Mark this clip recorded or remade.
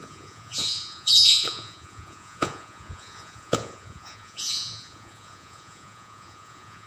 remade